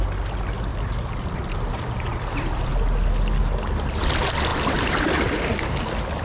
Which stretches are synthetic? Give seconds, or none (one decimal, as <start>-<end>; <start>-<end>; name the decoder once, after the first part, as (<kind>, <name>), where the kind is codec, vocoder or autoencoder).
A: 0.7-1.5 (vocoder, BigVGAN v2); 2.1-2.7; 4.5-5.2